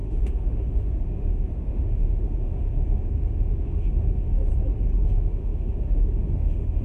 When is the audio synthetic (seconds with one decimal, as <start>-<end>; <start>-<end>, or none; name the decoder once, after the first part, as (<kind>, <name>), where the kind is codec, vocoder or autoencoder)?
0.0-4.5 (autoencoder, DAC-VAE); 5.0-6.8